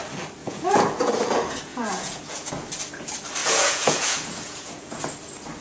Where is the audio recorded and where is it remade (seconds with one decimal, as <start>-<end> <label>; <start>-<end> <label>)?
0.0-0.4 recorded; 0.4-1.1 remade; 1.1-1.7 recorded; 1.7-2.5 remade; 2.5-3.4 recorded; 3.4-5.0 remade; 5.0-5.6 recorded